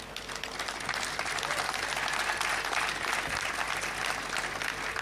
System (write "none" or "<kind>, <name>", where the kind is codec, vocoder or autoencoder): none